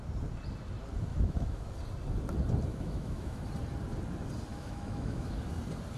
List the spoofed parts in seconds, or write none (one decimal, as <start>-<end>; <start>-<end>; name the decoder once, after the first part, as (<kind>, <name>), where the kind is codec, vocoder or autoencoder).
1.1-1.7 (autoencoder, DAC-VAE); 2.7-3.4; 4.5-5.4

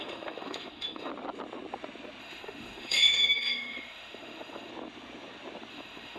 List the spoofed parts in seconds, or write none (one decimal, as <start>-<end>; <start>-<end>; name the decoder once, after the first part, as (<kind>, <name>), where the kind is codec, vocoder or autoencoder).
0.0-1.1 (autoencoder, DAC-VAE); 2.2-4.7; 5.7-6.2

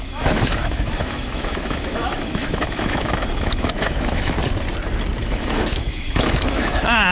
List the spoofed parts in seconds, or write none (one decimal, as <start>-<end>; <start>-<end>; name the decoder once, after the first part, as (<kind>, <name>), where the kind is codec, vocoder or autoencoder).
0.0-4.4 (autoencoder, DAC-VAE); 5.2-7.1

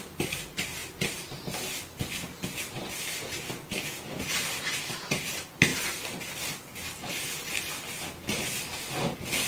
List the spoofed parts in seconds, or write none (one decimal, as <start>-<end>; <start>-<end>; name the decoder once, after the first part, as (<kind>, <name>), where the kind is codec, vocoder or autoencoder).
none

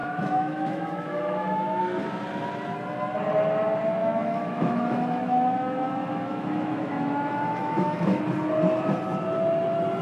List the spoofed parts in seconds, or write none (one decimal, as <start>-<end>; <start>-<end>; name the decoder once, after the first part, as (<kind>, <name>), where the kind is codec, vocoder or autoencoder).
0.0-1.8 (autoencoder, DAC-VAE); 4.0-8.2

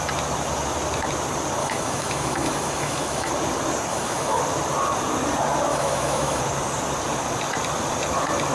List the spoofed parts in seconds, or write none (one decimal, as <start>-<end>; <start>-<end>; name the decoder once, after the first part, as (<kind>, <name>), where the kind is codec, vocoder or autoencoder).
1.6-3.3 (autoencoder, DAC-VAE); 3.9-4.4; 5.7-6.4